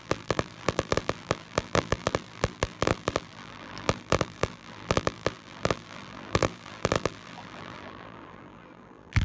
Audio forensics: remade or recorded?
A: remade